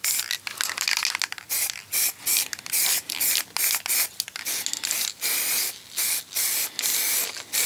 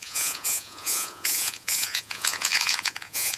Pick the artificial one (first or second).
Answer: second